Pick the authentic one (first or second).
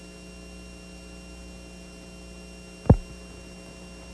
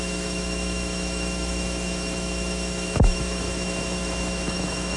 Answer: first